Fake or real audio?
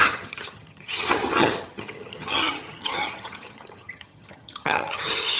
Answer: fake